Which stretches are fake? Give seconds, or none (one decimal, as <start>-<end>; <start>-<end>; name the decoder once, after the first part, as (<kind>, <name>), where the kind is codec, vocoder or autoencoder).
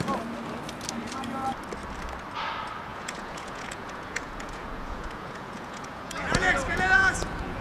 2.9-7.6 (vocoder, Vocos)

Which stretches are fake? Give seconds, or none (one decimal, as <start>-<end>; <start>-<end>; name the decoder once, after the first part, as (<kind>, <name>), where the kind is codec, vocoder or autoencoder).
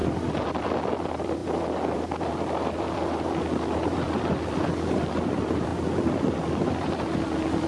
0.0-7.7 (vocoder, BigVGAN v2)